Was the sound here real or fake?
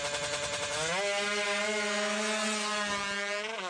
real